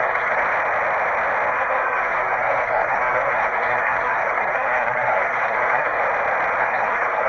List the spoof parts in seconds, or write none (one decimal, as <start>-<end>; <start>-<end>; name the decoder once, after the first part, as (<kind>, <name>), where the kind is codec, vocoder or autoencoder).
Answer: 0.0-0.4 (codec, SNAC); 1.5-6.0; 6.6-7.3